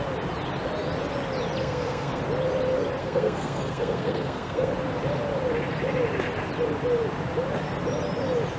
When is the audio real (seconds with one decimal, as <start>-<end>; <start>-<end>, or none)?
0.0-1.6; 2.2-3.0; 4.7-8.6